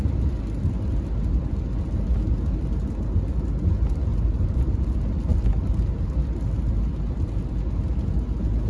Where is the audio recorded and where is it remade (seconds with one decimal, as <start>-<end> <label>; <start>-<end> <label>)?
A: 0.0-8.7 recorded